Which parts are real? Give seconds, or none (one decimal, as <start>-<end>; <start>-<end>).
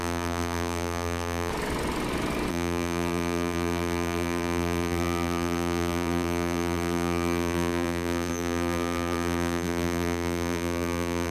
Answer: 1.5-2.5